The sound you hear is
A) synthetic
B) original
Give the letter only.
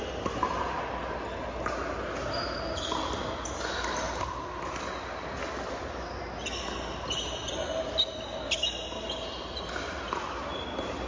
B